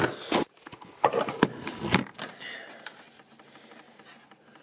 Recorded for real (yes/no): yes